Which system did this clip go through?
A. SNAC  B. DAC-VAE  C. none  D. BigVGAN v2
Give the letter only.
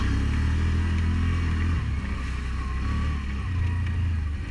C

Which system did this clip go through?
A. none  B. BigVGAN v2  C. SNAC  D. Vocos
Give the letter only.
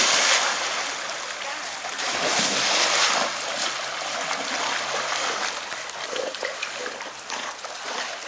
A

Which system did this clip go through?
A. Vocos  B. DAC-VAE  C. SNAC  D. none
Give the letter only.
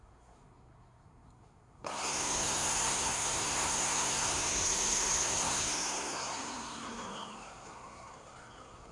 C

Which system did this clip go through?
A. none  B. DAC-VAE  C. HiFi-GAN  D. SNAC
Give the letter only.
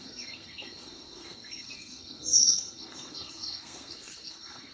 D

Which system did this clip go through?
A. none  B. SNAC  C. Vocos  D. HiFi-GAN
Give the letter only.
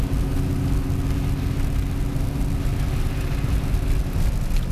A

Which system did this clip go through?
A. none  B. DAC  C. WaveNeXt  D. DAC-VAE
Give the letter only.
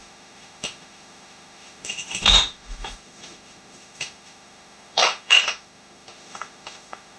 D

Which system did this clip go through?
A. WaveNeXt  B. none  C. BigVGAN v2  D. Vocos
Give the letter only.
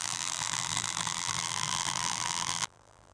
C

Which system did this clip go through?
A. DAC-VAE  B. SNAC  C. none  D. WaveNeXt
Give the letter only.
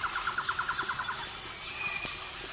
C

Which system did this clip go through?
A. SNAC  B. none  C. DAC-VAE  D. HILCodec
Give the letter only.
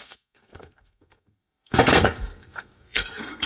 A